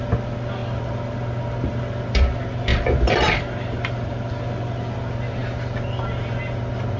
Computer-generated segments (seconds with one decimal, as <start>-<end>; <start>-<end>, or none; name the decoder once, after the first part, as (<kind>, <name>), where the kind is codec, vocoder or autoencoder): 2.7-4.3 (vocoder, BigVGAN v2)